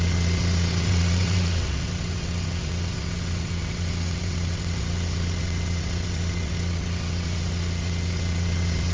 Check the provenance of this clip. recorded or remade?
remade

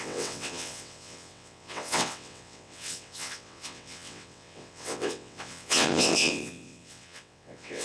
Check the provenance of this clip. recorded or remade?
remade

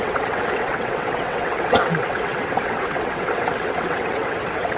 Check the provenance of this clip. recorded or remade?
remade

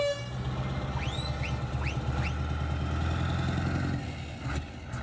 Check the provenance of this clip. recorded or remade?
recorded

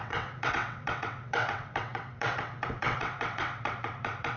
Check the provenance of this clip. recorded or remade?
remade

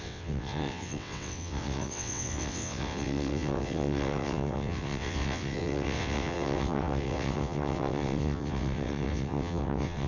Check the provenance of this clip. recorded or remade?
remade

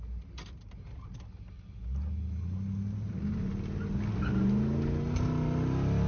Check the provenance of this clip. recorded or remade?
recorded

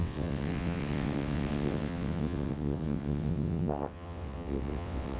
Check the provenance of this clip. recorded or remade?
remade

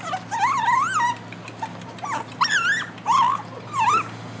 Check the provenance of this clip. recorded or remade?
recorded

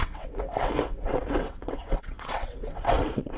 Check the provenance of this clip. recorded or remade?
remade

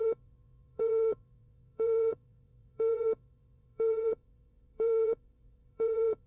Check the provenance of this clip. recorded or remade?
remade